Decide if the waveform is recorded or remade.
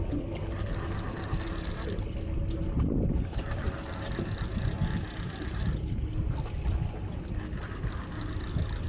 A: recorded